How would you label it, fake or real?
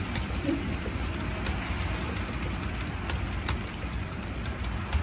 fake